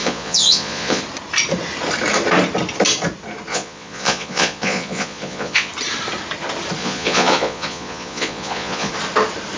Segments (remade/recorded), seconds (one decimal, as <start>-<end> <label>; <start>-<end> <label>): 0.0-1.0 remade; 1.0-3.5 recorded; 3.5-5.7 remade; 5.7-6.8 recorded; 6.8-8.9 remade; 8.9-9.6 recorded

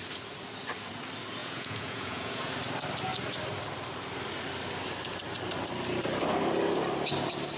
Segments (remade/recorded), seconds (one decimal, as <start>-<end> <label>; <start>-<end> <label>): 0.0-1.4 recorded; 1.4-2.5 remade; 2.5-7.6 recorded

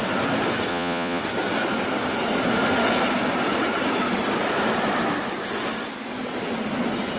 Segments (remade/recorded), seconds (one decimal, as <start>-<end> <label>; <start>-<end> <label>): 0.0-0.7 recorded; 0.7-1.2 remade; 1.2-7.2 recorded

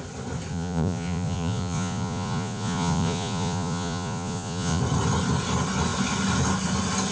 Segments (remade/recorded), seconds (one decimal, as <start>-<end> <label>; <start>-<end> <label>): 0.0-0.5 recorded; 0.5-4.8 remade; 4.8-7.1 recorded

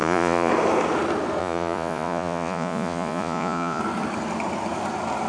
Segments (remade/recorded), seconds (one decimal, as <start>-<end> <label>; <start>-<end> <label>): 0.0-0.5 remade; 0.5-1.4 recorded; 1.4-3.8 remade; 3.8-5.3 recorded